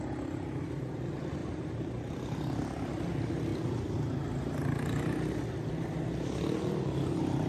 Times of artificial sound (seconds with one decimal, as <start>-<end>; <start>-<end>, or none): 1.4-2.1